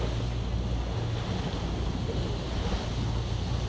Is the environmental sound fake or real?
real